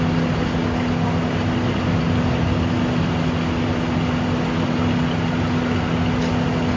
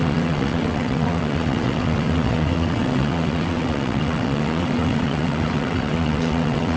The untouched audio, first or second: first